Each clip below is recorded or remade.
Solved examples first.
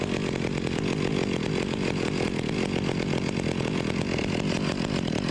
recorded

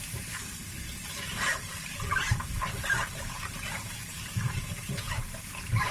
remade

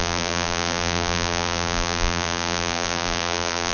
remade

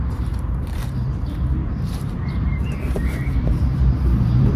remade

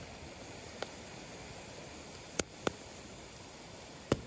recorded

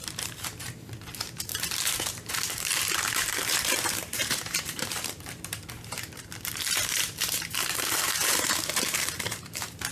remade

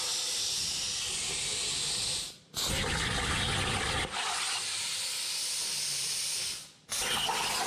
recorded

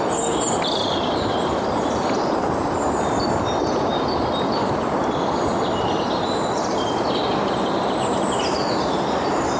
remade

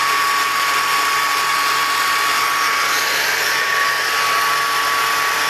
recorded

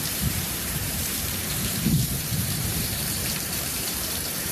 remade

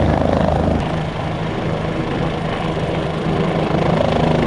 remade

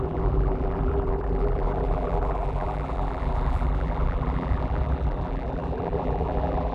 remade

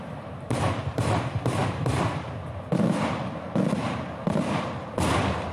remade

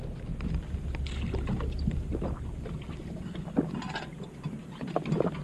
recorded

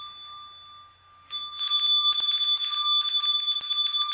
recorded